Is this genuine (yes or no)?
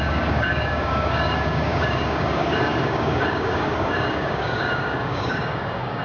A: no